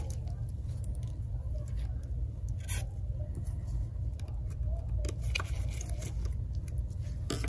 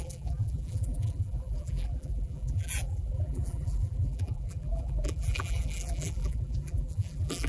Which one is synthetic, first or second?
second